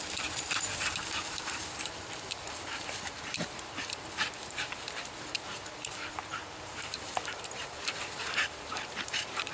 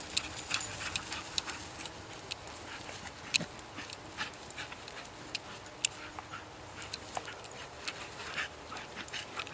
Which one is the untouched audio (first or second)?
second